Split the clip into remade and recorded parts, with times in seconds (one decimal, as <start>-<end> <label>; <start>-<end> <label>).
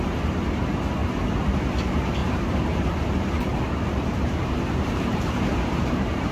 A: 0.0-2.2 recorded; 2.2-6.3 remade